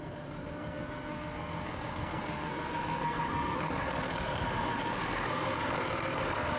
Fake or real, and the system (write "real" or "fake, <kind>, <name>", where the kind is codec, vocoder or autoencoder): fake, codec, SNAC